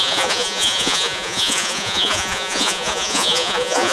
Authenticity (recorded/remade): remade